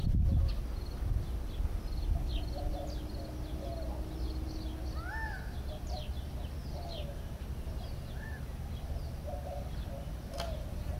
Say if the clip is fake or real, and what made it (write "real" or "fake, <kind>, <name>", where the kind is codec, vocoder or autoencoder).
real